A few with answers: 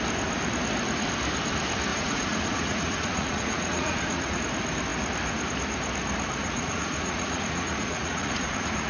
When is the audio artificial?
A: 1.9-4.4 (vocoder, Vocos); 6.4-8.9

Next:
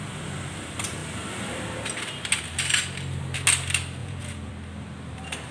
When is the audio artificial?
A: 4.0-4.5 (vocoder, Vocos)

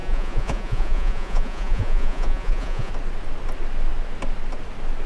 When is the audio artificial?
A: 0.0-2.9 (vocoder, Vocos)

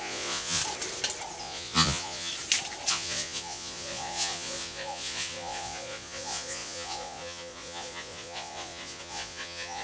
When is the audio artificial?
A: 0.0-0.6 (vocoder, Vocos); 1.4-2.3; 2.9-9.8